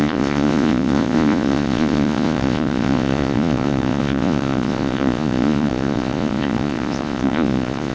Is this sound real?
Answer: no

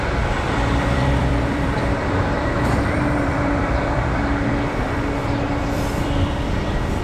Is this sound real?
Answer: no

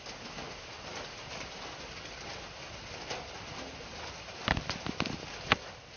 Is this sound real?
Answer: yes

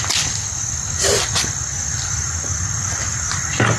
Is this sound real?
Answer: yes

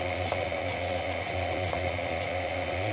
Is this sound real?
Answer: no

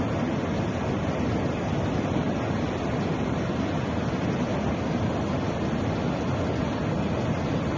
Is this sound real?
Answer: yes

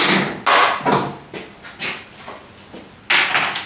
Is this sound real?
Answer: yes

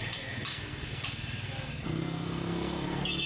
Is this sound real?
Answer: no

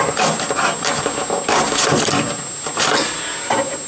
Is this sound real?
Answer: yes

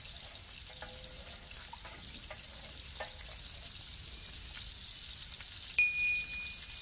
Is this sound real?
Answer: yes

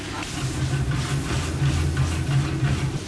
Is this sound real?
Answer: yes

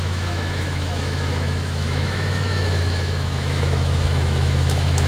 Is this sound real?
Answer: no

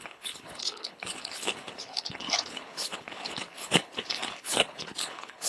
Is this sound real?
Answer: no